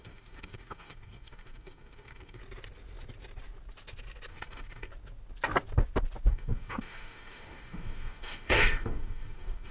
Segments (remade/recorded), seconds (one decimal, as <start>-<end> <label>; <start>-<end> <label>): 0.0-2.4 remade; 2.4-4.3 recorded; 4.3-4.9 remade; 4.9-6.3 recorded; 6.3-9.7 remade